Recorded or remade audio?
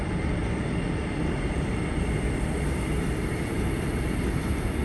recorded